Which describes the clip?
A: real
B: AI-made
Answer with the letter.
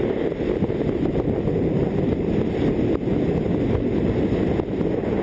A